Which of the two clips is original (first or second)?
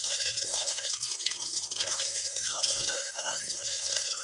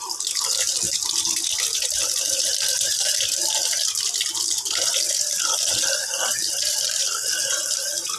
second